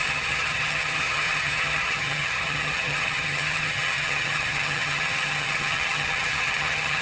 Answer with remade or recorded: remade